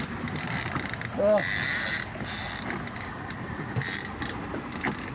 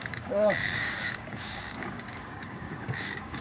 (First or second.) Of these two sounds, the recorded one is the first